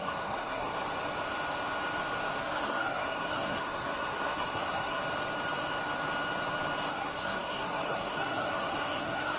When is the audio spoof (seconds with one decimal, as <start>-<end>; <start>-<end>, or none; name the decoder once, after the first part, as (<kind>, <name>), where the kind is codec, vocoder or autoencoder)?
0.0-0.7 (codec, SNAC); 2.4-5.0; 6.9-9.4